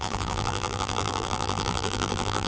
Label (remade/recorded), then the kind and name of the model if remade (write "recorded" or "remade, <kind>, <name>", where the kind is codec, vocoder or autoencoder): remade, vocoder, BigVGAN v2